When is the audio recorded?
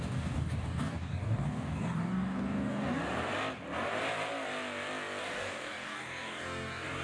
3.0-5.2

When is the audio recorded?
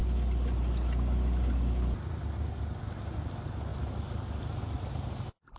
0.0-5.6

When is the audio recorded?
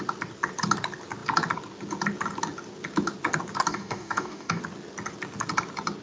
0.0-3.7; 4.6-6.0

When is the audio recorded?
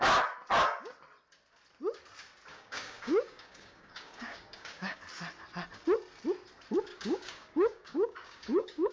0.0-2.5; 5.0-6.9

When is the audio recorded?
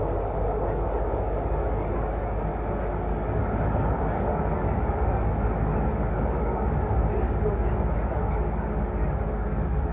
2.5-3.1; 7.0-8.3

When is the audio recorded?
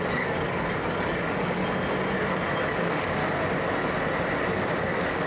1.6-2.6; 3.2-4.8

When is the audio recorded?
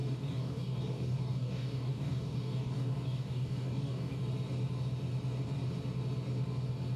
4.2-7.0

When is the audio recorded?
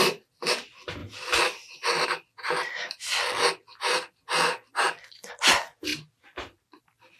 0.0-7.2